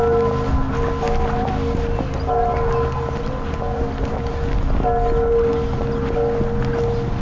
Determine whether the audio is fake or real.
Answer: real